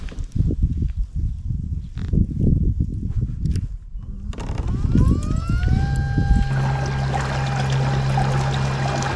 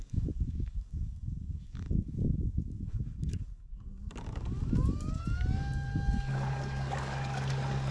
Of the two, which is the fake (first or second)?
second